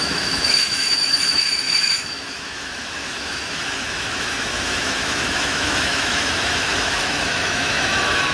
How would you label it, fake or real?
fake